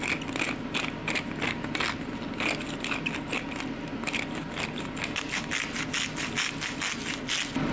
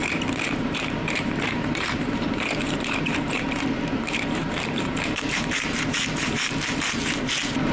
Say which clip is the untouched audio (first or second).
first